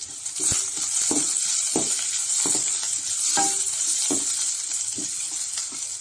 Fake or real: real